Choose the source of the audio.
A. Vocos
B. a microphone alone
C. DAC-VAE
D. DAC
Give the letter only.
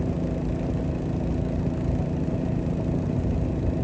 B